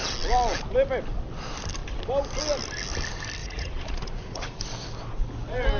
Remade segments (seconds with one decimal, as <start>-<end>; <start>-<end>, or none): 3.4-4.6